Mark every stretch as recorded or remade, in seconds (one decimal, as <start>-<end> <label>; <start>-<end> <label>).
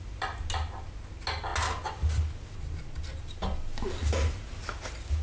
0.0-5.2 recorded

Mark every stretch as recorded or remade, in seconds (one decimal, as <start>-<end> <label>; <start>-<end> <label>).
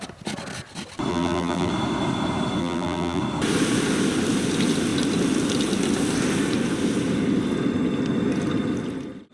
0.0-1.1 recorded; 1.1-1.7 remade; 1.7-2.6 recorded; 2.6-3.2 remade; 3.2-9.3 recorded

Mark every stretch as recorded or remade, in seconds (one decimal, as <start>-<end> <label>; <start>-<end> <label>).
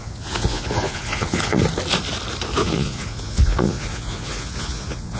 0.0-1.6 remade; 1.6-2.6 recorded; 2.6-5.2 remade